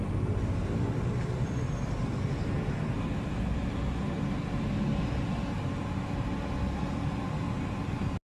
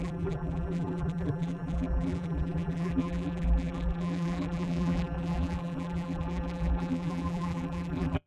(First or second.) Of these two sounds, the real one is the first